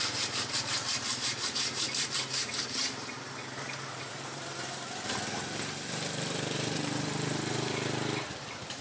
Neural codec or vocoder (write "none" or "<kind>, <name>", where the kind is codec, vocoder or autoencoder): vocoder, BigVGAN v2